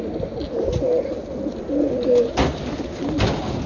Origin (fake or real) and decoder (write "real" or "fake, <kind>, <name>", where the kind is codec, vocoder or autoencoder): real